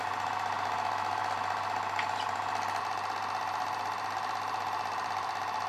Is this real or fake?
real